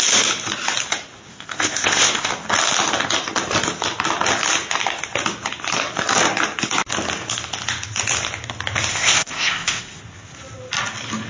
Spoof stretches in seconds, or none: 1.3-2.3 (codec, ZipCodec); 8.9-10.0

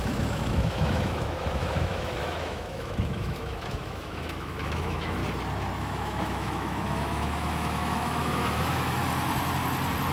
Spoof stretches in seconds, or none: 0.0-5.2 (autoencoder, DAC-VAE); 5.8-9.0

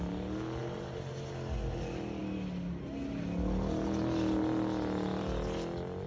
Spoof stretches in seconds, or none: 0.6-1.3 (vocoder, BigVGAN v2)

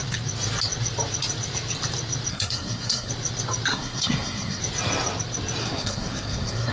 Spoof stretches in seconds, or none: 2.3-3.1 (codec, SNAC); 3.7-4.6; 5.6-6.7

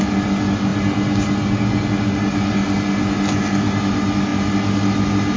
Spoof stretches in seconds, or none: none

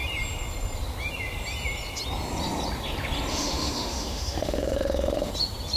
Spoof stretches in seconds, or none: 3.3-5.3 (autoencoder, DAC-VAE)